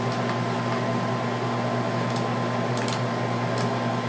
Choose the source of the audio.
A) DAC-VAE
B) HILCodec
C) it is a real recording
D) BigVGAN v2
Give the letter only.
C